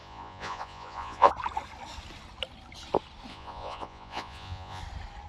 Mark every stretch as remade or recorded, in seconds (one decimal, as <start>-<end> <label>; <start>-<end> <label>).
0.0-1.3 remade; 1.3-3.3 recorded; 3.3-4.8 remade; 4.8-5.3 recorded